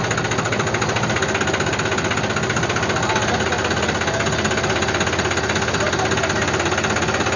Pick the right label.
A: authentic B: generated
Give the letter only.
A